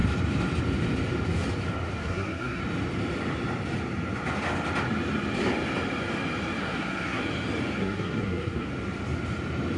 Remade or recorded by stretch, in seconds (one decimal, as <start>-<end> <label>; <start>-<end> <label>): 0.0-2.0 recorded; 2.0-2.6 remade; 2.6-6.6 recorded; 6.6-7.2 remade; 7.2-7.8 recorded; 7.8-8.7 remade; 8.7-9.8 recorded